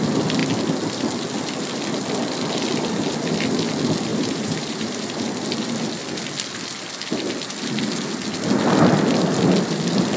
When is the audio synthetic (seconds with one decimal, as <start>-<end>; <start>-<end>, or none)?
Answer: 4.1-5.2

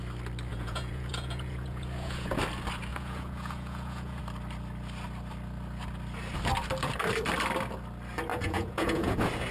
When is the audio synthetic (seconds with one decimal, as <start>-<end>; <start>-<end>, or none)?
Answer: 0.5-2.4; 2.9-4.2; 8.3-9.1

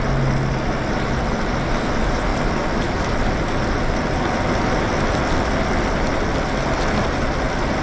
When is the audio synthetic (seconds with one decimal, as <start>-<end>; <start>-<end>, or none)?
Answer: none

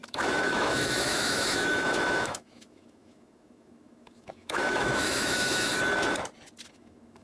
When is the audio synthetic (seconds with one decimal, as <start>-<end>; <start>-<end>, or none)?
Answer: 0.0-5.7; 6.7-7.2

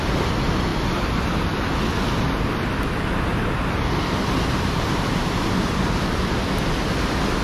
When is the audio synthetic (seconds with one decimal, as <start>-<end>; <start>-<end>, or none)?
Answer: 3.3-6.1